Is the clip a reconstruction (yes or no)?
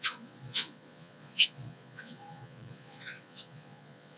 yes